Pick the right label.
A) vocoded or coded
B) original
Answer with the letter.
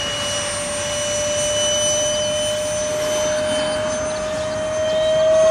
B